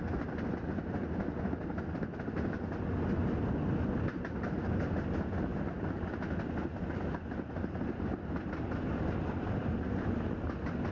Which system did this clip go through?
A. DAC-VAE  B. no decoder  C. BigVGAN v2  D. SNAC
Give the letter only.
B